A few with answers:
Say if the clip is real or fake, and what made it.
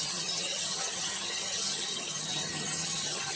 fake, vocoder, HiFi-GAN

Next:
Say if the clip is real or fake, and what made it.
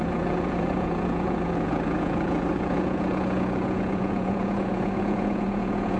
fake, vocoder, Vocos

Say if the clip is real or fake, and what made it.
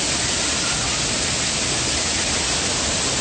real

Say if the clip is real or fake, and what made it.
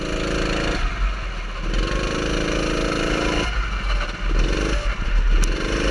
real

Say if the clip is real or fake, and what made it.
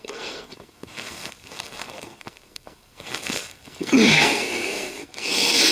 fake, codec, SNAC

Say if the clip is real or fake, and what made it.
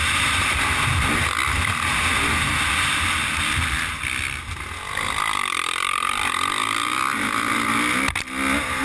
real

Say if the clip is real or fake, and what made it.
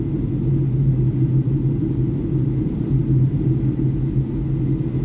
real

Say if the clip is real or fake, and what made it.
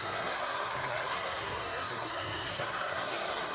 fake, codec, SNAC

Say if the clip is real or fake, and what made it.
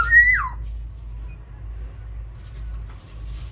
real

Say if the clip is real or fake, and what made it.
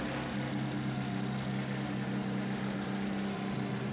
real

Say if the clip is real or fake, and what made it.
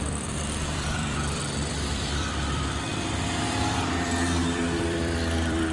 fake, vocoder, BigVGAN v2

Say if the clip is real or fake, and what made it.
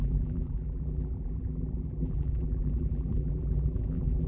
fake, vocoder, BigVGAN v2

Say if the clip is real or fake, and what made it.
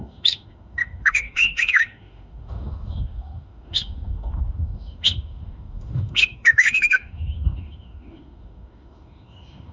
fake, autoencoder, DAC-VAE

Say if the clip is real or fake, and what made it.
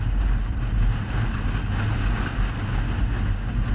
real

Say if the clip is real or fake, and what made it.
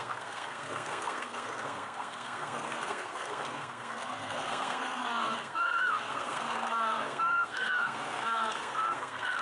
fake, codec, SNAC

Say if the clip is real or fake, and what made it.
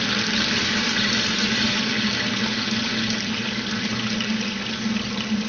real